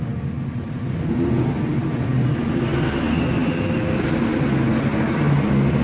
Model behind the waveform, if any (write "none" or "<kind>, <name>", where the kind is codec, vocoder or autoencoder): none